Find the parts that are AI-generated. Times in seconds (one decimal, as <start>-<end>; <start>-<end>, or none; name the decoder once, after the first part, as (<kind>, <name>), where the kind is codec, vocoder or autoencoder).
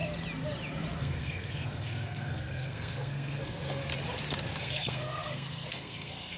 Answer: 1.0-3.9 (codec, SNAC); 4.6-6.4